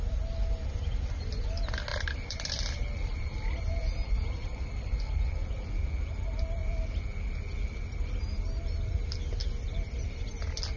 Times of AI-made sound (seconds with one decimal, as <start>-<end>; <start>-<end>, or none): 1.9-4.1

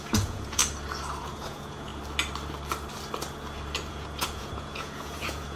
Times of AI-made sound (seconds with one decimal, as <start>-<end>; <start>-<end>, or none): 0.0-0.6; 1.2-1.9; 3.9-5.6

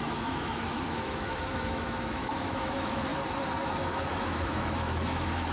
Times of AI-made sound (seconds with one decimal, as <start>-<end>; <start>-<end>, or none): 0.0-3.1; 3.8-5.5

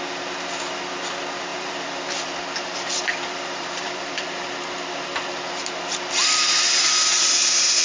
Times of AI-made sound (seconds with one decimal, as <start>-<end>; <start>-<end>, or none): 1.5-4.3

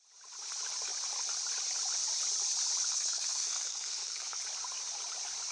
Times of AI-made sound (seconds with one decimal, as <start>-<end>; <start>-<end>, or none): 2.9-4.4

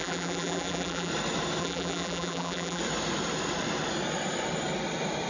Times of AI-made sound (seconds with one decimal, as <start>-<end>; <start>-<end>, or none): 0.0-1.1; 1.6-2.8

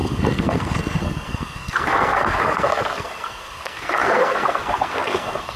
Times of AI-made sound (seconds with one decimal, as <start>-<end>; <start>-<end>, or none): 0.0-5.6